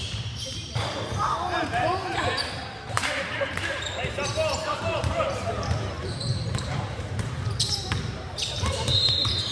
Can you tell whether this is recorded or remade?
remade